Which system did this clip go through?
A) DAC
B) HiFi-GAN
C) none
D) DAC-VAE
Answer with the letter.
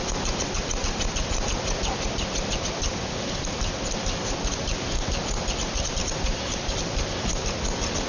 C